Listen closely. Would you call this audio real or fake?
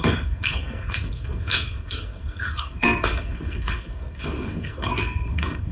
fake